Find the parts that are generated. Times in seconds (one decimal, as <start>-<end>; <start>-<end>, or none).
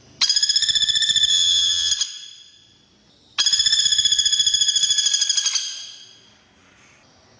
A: 1.3-1.9